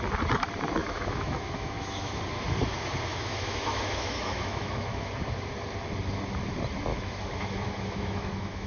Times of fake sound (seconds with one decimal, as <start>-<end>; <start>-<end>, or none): 0.8-2.2; 3.1-5.1; 6.9-8.7